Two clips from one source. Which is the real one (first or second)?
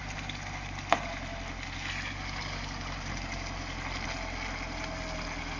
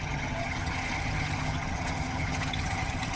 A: first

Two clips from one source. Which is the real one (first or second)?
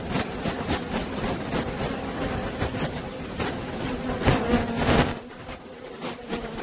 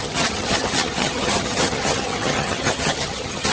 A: first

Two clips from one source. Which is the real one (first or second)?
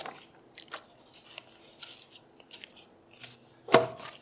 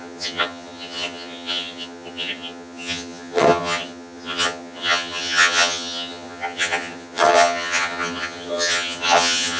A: first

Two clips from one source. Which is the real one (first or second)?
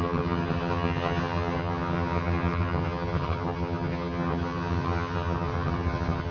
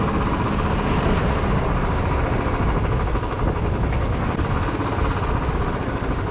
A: second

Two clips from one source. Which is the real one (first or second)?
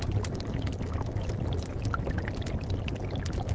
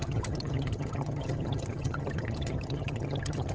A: first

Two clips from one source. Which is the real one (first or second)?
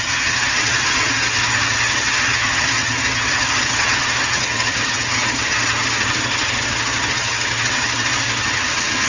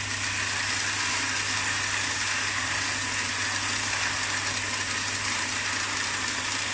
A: second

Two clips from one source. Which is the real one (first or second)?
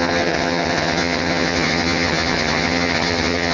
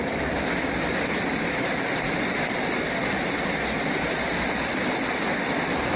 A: second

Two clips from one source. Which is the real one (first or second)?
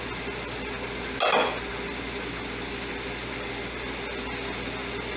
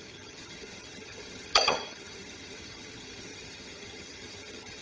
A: first